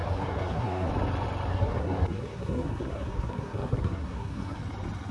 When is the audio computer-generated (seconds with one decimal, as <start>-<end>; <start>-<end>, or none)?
0.0-0.9; 1.5-4.6